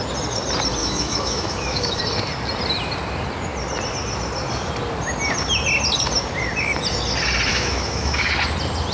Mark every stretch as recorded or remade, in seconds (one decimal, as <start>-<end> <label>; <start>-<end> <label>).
0.0-0.8 recorded; 0.8-2.0 remade; 2.0-7.5 recorded; 7.5-8.3 remade; 8.3-8.9 recorded